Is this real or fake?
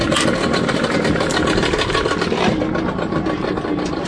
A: real